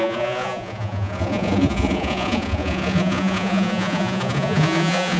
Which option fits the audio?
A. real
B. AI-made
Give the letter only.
B